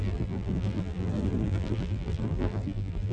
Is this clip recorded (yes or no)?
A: no